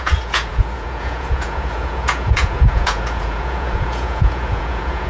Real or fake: fake